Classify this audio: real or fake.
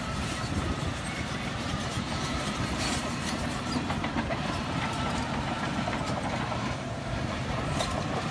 fake